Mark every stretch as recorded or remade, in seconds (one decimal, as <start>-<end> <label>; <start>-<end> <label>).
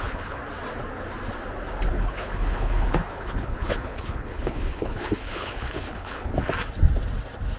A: 0.0-0.4 remade; 0.4-1.9 recorded; 1.9-6.3 remade; 6.3-7.6 recorded